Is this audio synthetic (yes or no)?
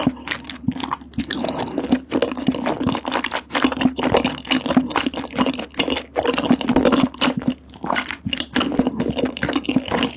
no